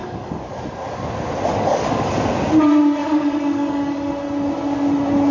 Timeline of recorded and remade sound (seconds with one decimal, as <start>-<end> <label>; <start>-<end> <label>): 0.0-0.6 remade; 0.6-1.5 recorded; 1.5-2.1 remade; 2.1-3.0 recorded; 3.0-4.1 remade; 4.1-5.3 recorded